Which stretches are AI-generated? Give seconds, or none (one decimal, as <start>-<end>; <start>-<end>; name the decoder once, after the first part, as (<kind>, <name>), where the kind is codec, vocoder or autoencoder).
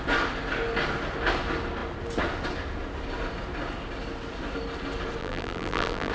5.2-6.1 (vocoder, BigVGAN v2)